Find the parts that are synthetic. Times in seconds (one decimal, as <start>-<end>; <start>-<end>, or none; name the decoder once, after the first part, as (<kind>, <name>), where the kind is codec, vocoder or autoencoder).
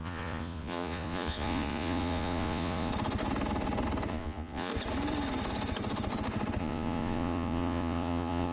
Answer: 0.0-2.9 (vocoder, Vocos); 4.1-4.7; 6.6-8.5